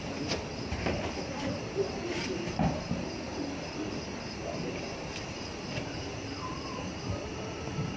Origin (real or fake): fake